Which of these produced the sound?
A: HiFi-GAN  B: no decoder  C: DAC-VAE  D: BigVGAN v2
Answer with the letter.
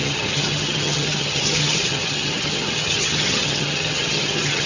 A